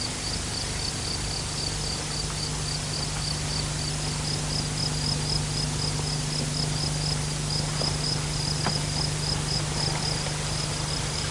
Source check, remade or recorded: recorded